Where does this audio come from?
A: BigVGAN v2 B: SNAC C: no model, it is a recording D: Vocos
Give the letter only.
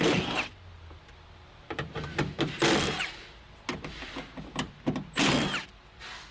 C